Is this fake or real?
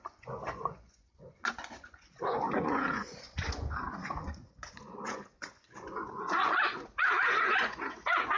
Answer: fake